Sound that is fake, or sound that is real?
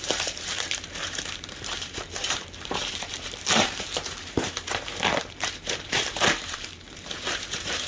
fake